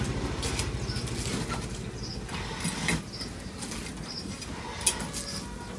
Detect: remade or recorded recorded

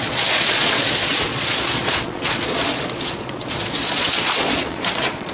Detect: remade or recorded remade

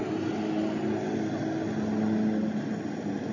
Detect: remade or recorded recorded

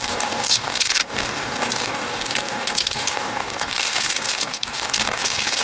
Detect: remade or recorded remade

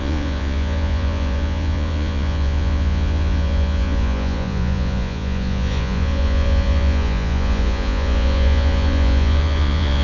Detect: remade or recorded remade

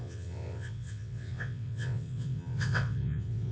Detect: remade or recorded remade